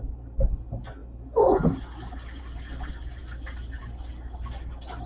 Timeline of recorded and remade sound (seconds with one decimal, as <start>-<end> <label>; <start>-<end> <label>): 0.0-5.1 recorded